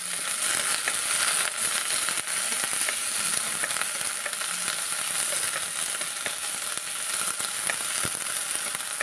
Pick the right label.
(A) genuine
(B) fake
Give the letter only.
A